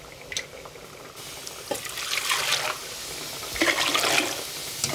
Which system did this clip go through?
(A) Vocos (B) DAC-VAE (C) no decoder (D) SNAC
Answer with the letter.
C